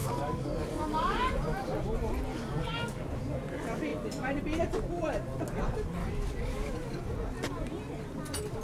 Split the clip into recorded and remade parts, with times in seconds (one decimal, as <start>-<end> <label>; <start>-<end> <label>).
0.0-1.3 remade; 1.3-2.3 recorded; 2.3-3.1 remade; 3.1-6.0 recorded; 6.0-6.7 remade; 6.7-8.6 recorded

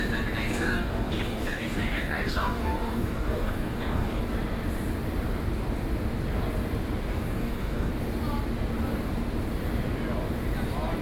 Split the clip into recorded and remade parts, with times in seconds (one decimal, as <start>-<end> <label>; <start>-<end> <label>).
0.0-0.5 recorded; 0.5-4.2 remade; 4.2-7.1 recorded; 7.1-7.9 remade; 7.9-11.0 recorded

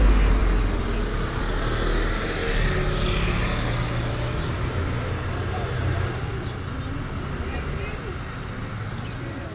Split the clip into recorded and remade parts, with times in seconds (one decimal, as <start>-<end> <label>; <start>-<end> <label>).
0.0-9.5 recorded

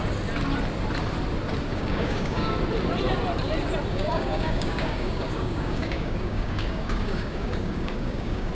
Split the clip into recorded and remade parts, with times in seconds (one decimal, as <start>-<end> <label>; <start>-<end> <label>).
0.0-1.7 recorded; 1.7-2.5 remade; 2.5-3.9 recorded; 3.9-8.5 remade

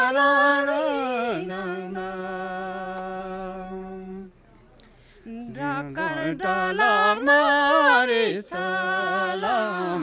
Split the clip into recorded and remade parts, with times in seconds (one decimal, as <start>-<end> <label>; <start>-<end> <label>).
0.0-2.2 remade; 2.2-3.2 recorded; 3.2-4.5 remade; 4.5-8.3 recorded; 8.3-10.0 remade